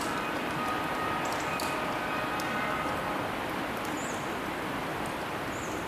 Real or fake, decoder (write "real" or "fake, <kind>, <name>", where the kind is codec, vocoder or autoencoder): fake, vocoder, BigVGAN v2